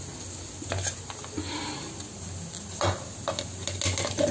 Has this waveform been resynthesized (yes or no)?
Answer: no